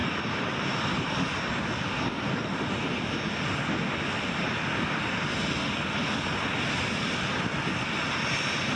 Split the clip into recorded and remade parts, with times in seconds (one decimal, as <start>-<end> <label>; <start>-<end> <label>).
0.0-1.1 remade; 1.1-8.8 recorded